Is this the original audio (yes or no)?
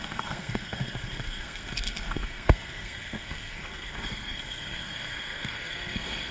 no